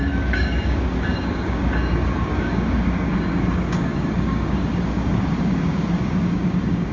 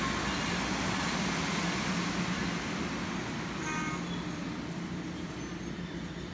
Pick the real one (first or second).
second